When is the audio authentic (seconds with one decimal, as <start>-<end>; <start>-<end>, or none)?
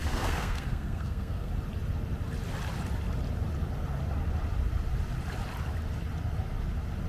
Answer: 1.5-7.1